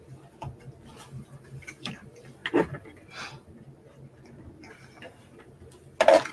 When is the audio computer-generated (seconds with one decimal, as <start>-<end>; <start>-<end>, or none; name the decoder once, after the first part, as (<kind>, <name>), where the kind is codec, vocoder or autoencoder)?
none